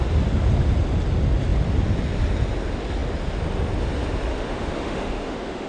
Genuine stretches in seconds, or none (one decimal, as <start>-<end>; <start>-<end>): 0.0-4.3

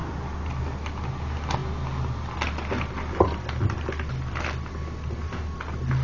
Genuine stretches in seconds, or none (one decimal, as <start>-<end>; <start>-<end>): 0.0-6.0

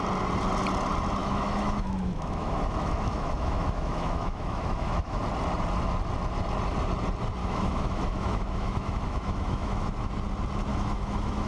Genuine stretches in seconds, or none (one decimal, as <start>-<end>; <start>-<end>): 0.0-1.2; 5.2-7.4; 10.1-10.7

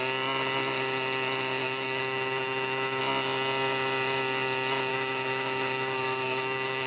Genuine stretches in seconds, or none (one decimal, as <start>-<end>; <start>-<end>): 0.0-1.6; 3.0-4.9

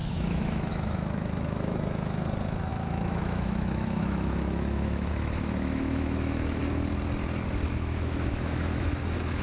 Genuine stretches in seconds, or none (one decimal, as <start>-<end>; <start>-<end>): 6.6-7.7

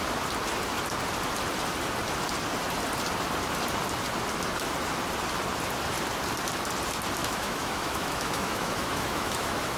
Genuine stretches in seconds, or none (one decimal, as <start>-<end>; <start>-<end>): 0.0-7.2

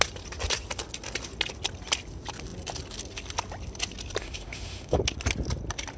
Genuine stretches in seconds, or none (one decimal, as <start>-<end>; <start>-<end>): 0.0-4.2; 5.0-6.0

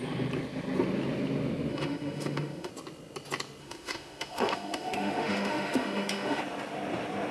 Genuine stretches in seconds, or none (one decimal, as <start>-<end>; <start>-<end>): 0.0-1.7; 2.7-3.6; 6.4-7.3